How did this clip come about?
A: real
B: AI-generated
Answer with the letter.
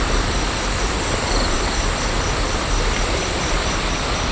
B